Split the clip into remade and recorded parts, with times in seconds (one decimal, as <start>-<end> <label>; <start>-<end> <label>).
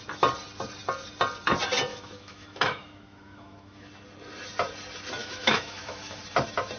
0.0-1.9 recorded; 1.9-3.9 remade; 3.9-5.2 recorded; 5.2-6.2 remade; 6.2-6.8 recorded